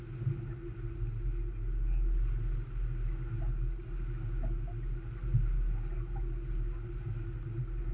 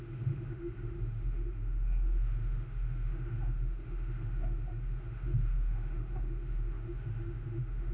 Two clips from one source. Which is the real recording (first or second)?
first